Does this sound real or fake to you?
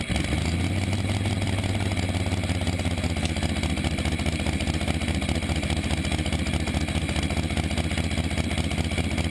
real